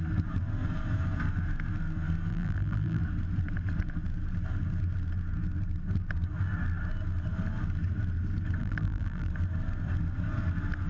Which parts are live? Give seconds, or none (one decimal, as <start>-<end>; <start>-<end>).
0.0-2.3; 3.0-8.6; 9.3-10.9

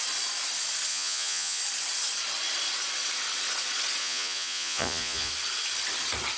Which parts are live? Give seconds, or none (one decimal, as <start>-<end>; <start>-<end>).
0.0-0.9; 1.6-4.0; 5.3-6.4

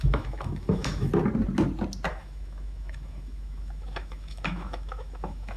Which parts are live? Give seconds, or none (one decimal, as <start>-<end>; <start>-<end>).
1.1-2.1

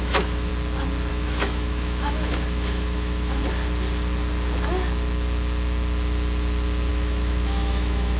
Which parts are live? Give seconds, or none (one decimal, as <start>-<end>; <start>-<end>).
0.5-1.1; 3.4-6.9